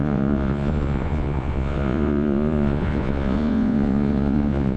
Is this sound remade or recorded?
remade